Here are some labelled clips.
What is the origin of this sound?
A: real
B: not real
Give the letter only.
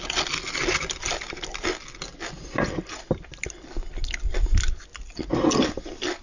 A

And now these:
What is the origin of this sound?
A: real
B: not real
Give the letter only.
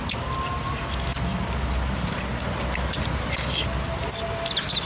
A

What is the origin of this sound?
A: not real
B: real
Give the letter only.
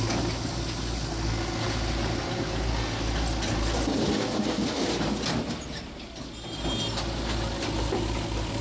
B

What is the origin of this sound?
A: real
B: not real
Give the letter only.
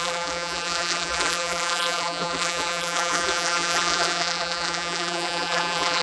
B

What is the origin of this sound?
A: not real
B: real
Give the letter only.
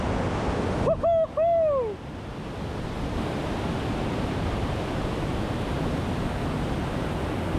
B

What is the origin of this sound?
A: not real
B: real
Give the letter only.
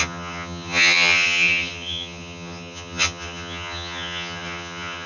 A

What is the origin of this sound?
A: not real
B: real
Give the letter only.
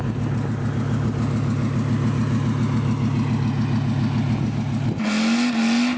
B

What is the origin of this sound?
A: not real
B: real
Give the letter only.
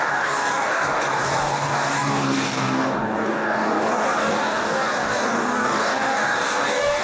A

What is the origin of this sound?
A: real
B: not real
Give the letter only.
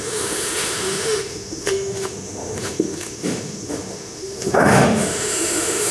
B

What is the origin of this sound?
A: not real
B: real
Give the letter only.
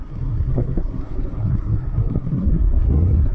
A